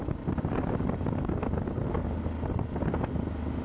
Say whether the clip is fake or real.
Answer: real